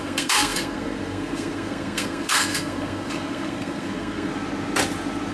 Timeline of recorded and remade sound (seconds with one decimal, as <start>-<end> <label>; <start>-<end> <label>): 0.0-4.3 remade; 4.3-5.3 recorded